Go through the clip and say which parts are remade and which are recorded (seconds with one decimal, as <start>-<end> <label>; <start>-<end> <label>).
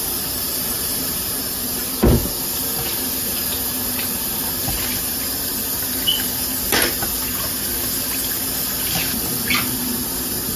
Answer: 0.0-0.5 recorded; 0.5-1.4 remade; 1.4-10.6 recorded